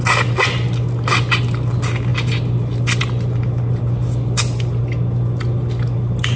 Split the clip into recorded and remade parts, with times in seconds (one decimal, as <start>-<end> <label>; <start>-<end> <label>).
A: 0.0-6.4 recorded